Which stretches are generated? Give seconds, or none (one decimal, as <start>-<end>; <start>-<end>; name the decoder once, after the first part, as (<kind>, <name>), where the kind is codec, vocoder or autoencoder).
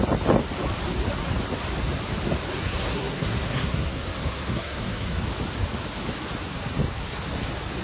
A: 2.6-5.2 (codec, SNAC)